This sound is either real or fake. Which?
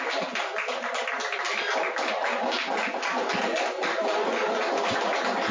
real